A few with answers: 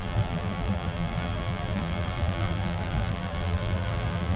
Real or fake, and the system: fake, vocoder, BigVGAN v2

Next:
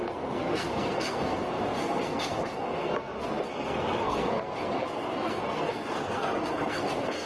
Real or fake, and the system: fake, codec, SNAC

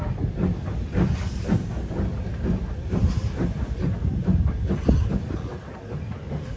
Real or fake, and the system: real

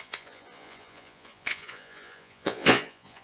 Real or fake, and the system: fake, vocoder, Vocos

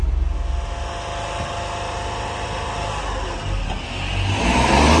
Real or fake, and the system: real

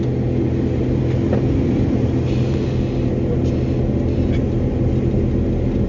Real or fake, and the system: real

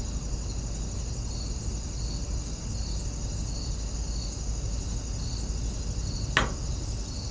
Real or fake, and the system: real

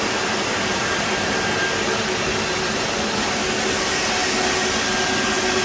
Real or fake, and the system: real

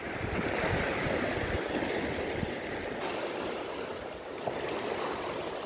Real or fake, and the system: real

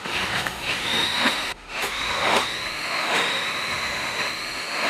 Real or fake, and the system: fake, autoencoder, DAC-VAE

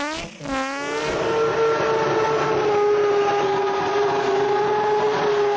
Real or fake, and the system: real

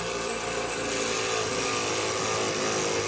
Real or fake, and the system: real